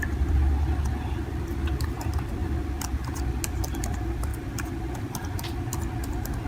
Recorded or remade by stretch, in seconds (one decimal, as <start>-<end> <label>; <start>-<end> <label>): 0.0-1.5 remade; 1.5-6.5 recorded